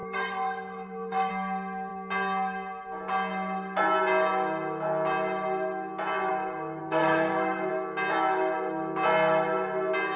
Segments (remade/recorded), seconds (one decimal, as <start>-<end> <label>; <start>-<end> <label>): 0.0-1.3 remade; 1.3-6.8 recorded; 6.8-7.7 remade; 7.7-10.2 recorded